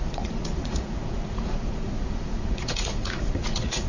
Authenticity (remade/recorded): remade